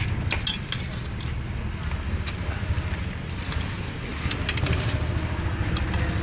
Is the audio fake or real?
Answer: real